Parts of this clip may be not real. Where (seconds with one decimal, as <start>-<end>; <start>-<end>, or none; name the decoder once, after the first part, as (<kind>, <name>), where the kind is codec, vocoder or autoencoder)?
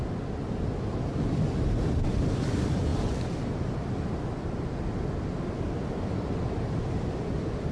none